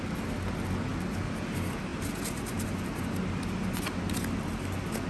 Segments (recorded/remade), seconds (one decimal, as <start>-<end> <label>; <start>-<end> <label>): 0.0-5.1 recorded